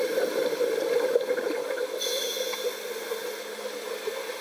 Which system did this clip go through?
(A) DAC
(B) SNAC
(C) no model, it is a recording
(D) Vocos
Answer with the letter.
C